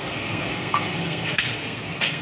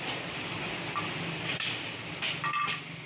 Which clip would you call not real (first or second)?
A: first